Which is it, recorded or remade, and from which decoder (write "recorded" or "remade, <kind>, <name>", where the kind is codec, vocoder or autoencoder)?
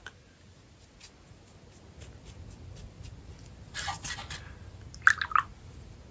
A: recorded